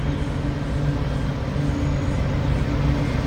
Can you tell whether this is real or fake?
real